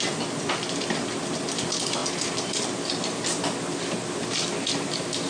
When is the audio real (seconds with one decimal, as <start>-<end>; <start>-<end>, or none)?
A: 0.0-5.3